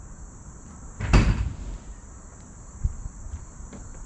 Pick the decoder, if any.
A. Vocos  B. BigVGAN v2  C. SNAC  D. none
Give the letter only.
B